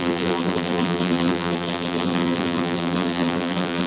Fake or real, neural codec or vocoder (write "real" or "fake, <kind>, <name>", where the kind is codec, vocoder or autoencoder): fake, vocoder, BigVGAN v2